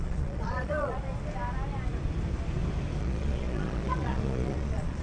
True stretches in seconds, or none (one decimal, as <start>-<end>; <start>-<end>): 1.0-3.0